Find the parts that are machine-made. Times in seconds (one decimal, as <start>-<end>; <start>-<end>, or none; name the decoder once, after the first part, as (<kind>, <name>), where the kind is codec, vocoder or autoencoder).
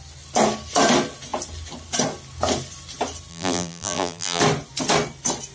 3.3-4.4 (vocoder, BigVGAN v2)